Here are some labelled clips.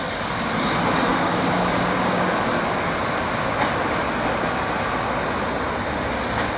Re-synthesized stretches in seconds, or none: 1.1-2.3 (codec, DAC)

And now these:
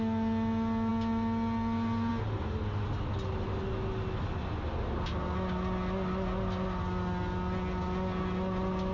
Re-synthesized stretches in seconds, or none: none

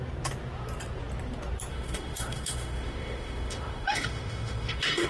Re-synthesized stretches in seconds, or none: 1.7-5.1 (autoencoder, DAC-VAE)

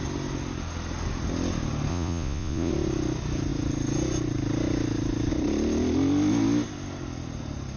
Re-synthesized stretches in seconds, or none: 1.9-2.7 (vocoder, Vocos)